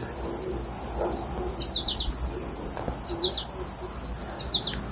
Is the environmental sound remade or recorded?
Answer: recorded